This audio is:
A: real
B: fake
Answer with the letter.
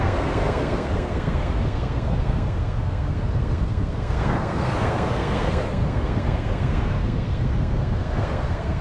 B